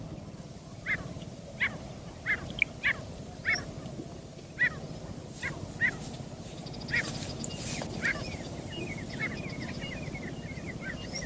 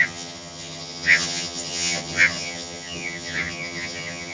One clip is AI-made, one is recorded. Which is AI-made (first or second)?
second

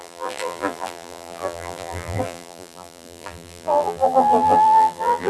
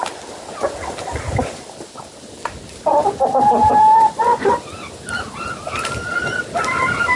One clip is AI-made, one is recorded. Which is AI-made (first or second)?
first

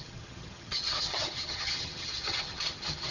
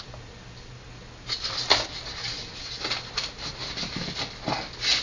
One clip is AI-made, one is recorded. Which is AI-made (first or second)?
first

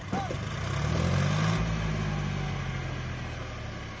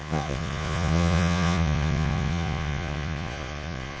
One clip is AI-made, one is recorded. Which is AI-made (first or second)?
second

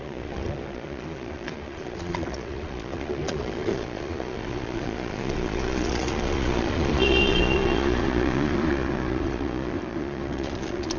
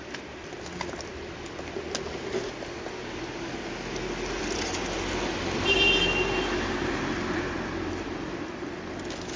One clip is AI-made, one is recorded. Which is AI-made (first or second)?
first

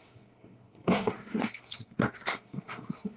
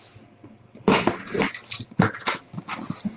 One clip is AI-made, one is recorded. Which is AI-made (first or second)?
first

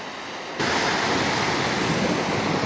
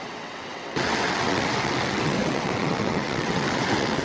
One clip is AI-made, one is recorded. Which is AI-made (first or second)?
second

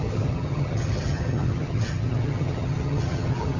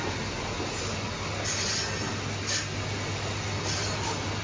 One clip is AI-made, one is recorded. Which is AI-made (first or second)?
first